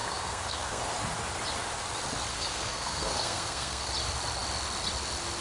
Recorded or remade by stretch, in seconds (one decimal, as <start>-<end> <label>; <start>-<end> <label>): 0.0-0.8 remade; 0.8-2.3 recorded; 2.3-3.9 remade; 3.9-5.4 recorded